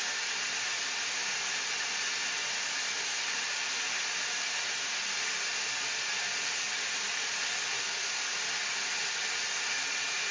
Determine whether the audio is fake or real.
real